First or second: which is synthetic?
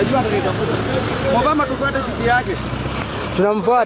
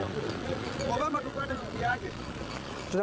second